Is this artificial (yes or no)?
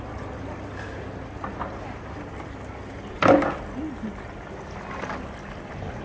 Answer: no